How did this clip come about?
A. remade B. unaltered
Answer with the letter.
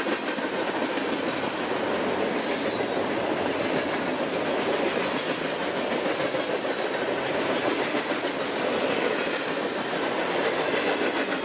B